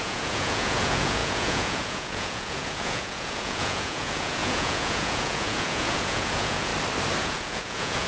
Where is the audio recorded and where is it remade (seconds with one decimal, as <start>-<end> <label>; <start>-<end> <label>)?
0.0-6.7 remade; 6.7-7.2 recorded; 7.2-8.1 remade